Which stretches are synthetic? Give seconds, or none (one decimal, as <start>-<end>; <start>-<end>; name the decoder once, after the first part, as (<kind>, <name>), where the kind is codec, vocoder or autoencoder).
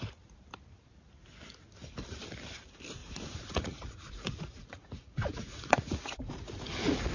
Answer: 3.0-7.1 (vocoder, Vocos)